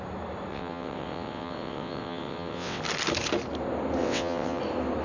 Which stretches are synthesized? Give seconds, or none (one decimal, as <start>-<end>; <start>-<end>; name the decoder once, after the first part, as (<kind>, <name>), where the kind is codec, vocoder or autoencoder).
0.5-2.8 (vocoder, WaveNeXt); 4.0-4.6